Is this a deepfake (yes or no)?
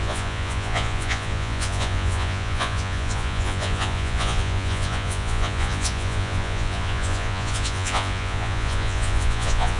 yes